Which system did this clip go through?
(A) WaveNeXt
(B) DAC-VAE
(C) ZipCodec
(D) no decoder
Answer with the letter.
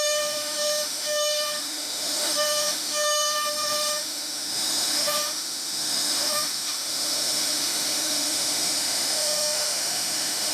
B